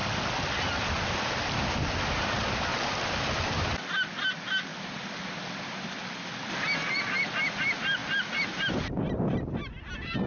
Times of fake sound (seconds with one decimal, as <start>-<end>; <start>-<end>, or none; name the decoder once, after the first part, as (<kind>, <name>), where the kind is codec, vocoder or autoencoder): 0.0-0.5 (vocoder, BigVGAN v2); 2.7-3.4; 8.0-8.9